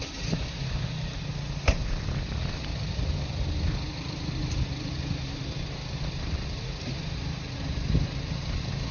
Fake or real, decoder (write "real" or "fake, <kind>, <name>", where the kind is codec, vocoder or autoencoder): real